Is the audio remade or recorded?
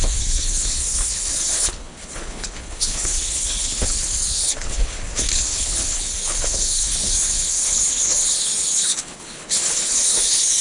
remade